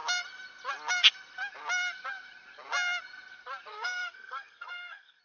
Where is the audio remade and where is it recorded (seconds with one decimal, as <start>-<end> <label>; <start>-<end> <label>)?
0.0-3.7 recorded; 3.7-5.2 remade